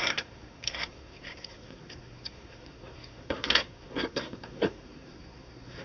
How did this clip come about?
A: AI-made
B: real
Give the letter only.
A